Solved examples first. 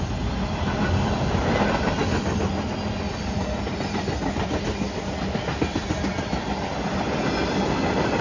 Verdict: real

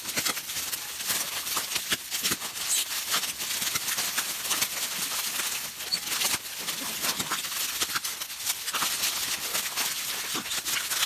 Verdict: real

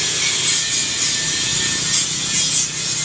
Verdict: real